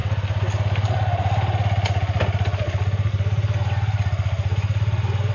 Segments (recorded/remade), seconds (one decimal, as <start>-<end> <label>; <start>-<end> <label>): 0.0-5.3 recorded